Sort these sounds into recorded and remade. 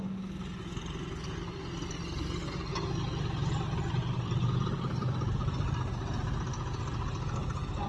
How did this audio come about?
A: recorded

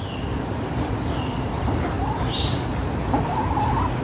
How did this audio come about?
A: recorded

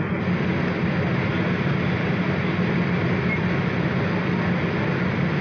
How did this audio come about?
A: recorded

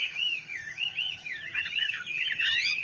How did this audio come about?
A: remade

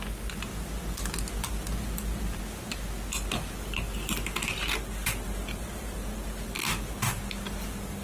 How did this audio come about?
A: recorded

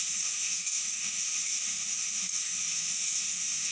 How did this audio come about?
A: remade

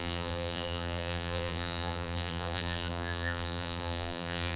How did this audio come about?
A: remade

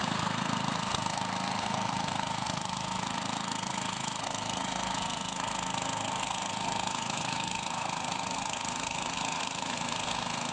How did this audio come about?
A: remade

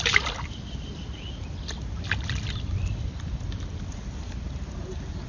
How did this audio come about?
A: recorded